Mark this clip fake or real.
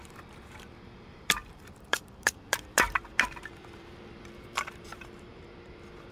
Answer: fake